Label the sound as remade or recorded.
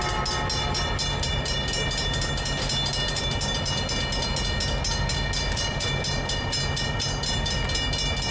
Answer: recorded